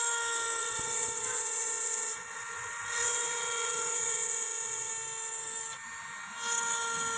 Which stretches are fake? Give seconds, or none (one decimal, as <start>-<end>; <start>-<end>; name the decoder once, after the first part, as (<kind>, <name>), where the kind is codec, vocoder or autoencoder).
0.6-4.9 (vocoder, WaveNeXt)